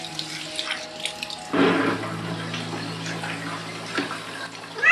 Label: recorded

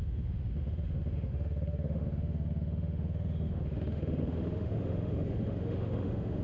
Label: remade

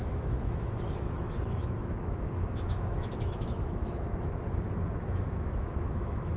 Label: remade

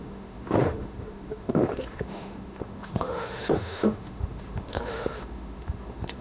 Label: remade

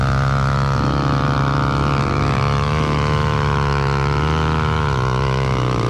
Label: remade